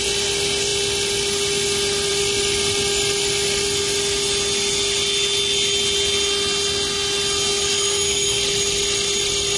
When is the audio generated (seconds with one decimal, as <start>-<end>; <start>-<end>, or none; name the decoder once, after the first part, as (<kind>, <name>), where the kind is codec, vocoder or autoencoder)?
7.5-8.4 (codec, DAC)